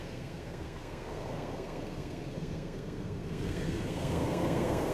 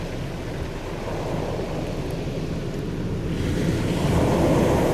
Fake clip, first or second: first